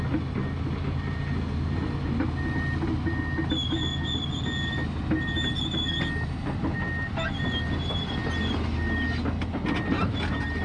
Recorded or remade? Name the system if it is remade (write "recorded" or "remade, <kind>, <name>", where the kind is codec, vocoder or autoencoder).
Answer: recorded